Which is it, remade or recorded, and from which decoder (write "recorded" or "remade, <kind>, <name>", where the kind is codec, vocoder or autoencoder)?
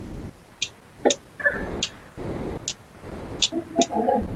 recorded